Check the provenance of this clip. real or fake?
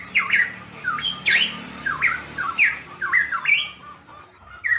real